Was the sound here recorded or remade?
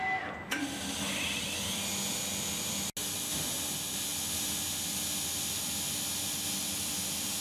recorded